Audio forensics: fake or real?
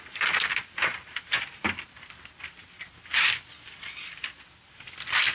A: real